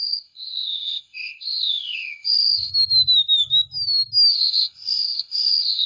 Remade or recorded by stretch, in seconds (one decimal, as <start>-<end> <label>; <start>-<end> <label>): 0.0-2.7 remade; 2.7-4.3 recorded; 4.3-5.9 remade